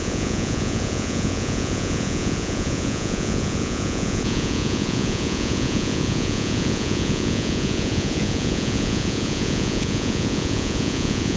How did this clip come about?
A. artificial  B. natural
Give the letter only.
A